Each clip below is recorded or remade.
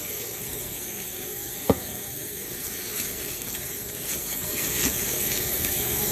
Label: remade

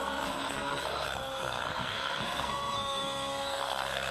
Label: remade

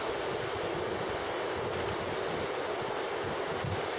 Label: recorded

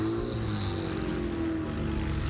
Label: recorded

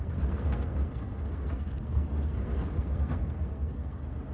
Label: remade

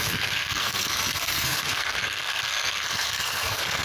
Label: remade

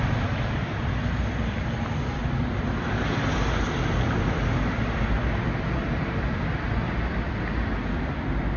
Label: recorded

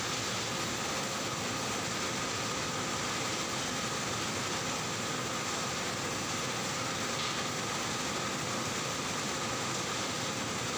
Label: recorded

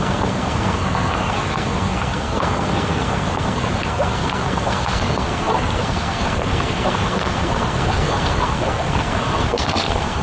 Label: remade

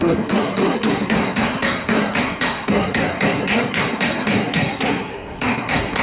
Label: remade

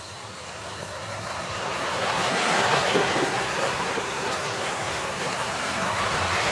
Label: remade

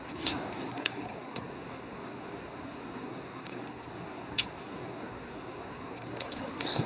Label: remade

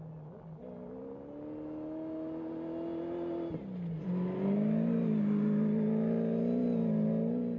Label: recorded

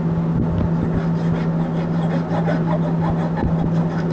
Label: recorded